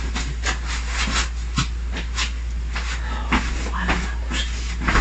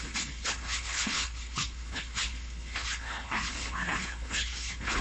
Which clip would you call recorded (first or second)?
first